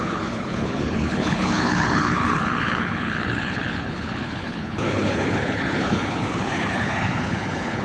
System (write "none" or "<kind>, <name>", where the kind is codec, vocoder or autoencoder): codec, HILCodec